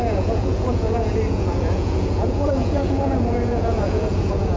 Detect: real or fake fake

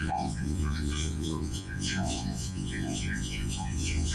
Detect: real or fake fake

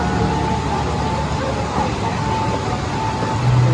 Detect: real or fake real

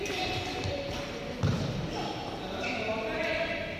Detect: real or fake real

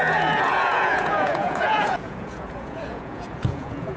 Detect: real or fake fake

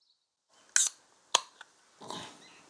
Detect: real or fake real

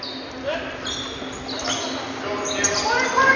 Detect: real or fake real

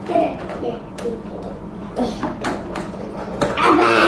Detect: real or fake fake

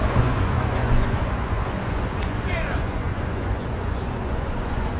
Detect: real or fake fake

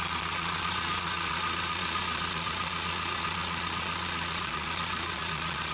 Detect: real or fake fake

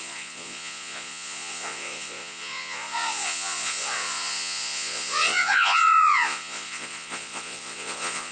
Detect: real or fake fake